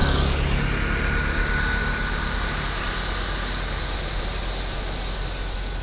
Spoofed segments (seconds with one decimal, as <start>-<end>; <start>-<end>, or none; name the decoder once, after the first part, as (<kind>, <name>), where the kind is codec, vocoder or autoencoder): 0.0-0.7 (codec, DAC)